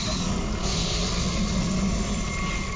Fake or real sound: real